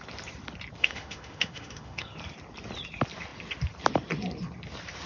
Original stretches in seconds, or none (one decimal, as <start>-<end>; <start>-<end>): 0.0-0.8; 2.1-5.1